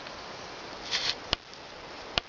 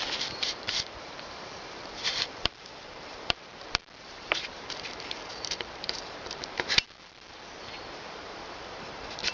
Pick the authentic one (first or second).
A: first